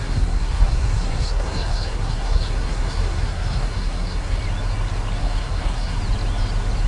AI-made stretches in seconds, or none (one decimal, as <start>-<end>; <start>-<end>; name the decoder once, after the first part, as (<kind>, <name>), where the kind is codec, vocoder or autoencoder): 0.0-4.4 (codec, SNAC); 5.2-6.0

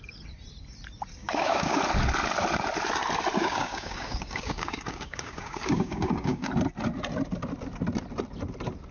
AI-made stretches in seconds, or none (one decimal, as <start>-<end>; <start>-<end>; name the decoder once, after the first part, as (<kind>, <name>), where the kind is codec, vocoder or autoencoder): 1.2-1.8 (codec, DAC); 3.4-6.5